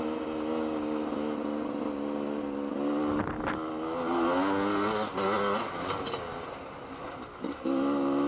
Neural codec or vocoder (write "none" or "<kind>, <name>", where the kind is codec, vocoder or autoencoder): none